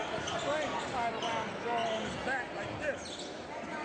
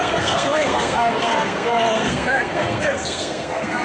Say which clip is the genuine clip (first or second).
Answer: first